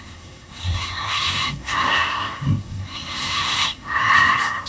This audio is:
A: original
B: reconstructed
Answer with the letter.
B